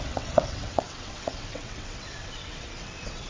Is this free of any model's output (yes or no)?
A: no